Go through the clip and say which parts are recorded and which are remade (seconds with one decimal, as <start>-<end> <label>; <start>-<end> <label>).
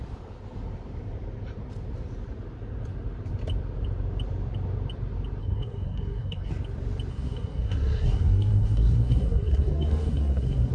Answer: 0.0-5.4 recorded; 5.4-6.5 remade; 6.5-7.1 recorded; 7.1-10.7 remade